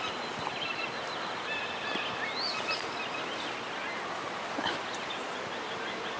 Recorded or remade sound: recorded